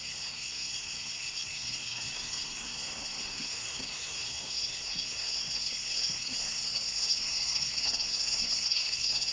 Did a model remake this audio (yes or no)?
yes